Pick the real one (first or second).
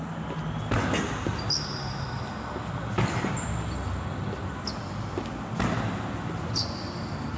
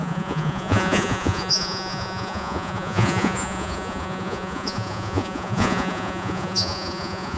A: first